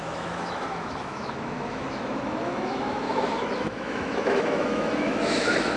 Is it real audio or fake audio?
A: fake